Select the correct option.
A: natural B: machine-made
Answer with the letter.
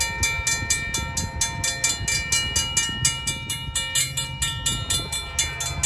A